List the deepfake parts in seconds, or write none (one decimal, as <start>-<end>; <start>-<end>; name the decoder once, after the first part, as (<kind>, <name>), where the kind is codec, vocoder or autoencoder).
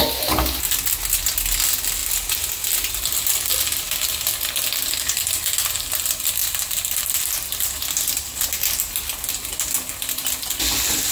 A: none